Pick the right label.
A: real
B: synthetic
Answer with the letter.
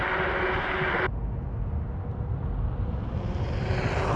A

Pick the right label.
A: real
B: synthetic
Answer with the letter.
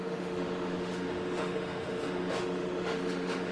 B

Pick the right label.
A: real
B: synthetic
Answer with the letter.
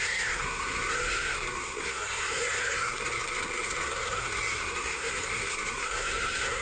B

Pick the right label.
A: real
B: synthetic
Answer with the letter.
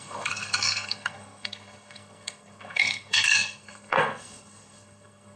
B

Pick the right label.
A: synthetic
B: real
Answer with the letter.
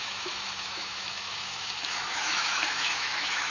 A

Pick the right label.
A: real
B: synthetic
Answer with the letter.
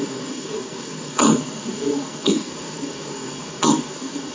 B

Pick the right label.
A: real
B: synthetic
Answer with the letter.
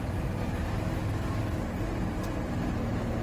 B